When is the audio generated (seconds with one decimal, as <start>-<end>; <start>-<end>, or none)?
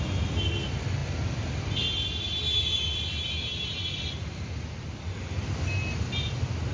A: none